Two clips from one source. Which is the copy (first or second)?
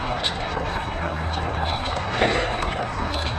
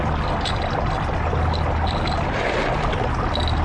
first